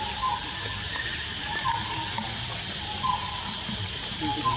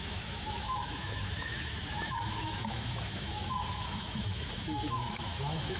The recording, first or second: first